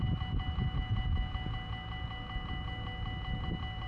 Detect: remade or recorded recorded